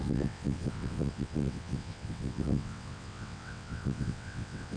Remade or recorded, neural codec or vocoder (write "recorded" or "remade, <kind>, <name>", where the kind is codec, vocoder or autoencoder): remade, vocoder, WaveNeXt